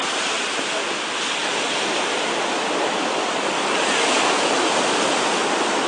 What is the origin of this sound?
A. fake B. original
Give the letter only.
B